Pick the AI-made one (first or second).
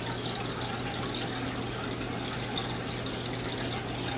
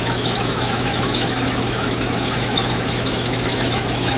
second